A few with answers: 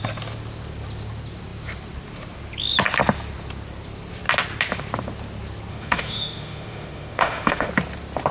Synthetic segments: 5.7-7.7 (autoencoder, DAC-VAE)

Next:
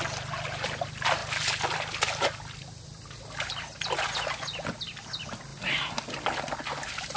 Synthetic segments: none

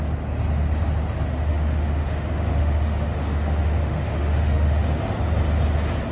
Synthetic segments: 1.4-5.0 (autoencoder, DAC-VAE)

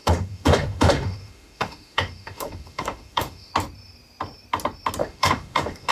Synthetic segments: 0.0-3.5 (autoencoder, DAC-VAE); 5.0-5.9

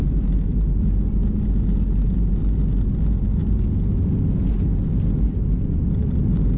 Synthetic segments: none

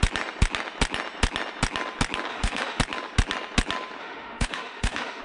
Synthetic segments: 2.3-2.8 (autoencoder, DAC-VAE); 4.0-5.2